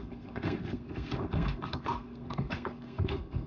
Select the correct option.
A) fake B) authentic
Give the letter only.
A